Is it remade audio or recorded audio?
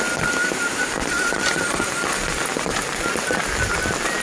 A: recorded